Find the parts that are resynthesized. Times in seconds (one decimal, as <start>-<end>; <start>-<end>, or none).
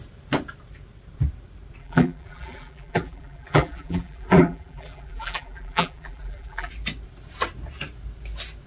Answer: 1.8-6.7